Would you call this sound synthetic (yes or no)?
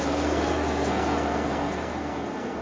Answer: yes